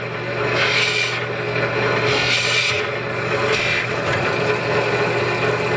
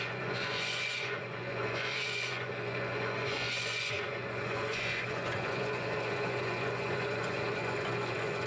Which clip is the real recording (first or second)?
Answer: first